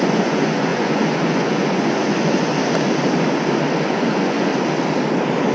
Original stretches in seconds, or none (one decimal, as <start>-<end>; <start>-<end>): 2.5-3.9; 4.5-5.5